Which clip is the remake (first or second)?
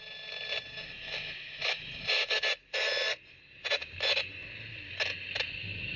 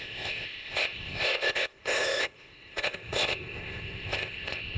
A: second